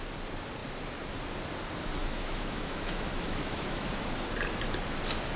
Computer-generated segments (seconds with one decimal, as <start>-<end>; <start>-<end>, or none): 2.0-3.9